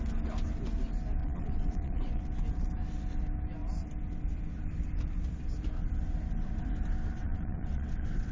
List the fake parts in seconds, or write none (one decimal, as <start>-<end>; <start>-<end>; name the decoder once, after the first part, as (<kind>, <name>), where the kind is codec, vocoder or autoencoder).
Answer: 1.2-2.2 (vocoder, WaveNeXt); 7.2-8.3